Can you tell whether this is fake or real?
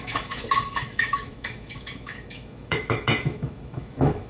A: fake